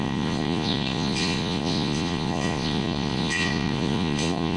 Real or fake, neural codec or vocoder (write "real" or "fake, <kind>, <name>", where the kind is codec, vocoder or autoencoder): fake, vocoder, Vocos